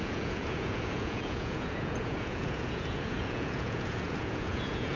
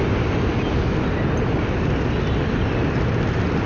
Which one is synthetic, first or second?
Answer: first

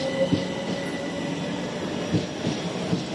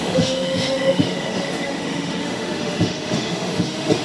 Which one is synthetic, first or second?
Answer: second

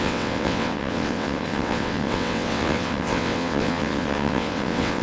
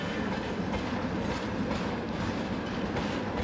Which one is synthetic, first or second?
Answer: first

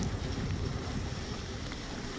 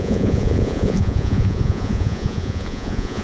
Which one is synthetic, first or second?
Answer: second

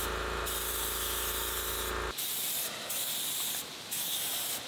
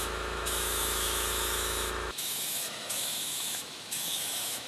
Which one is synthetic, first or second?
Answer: second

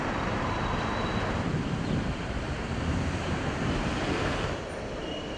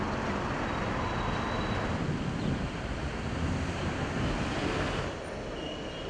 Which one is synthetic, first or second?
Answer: first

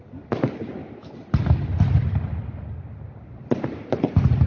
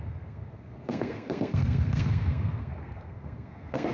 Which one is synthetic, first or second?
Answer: second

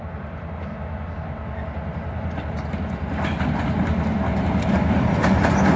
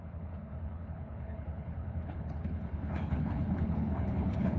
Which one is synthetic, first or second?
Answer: second